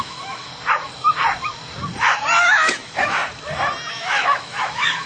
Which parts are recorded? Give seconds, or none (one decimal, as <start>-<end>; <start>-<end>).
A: 0.5-2.4; 3.2-3.9